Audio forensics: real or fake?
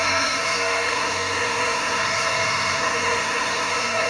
fake